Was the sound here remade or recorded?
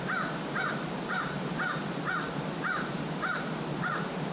remade